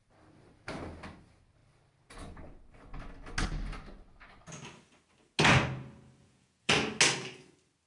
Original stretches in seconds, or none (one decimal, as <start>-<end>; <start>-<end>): 0.0-6.2; 6.7-7.9